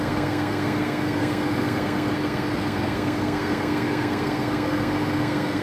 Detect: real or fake fake